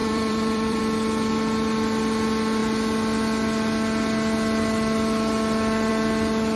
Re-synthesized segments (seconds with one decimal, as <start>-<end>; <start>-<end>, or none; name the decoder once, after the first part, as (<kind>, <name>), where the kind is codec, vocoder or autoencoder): 0.0-0.8 (vocoder, BigVGAN v2)

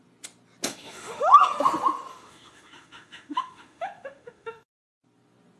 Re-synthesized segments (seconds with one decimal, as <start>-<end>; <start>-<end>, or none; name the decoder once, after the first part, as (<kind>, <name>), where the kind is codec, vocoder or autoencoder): 0.7-1.3 (autoencoder, DAC-VAE); 2.1-4.7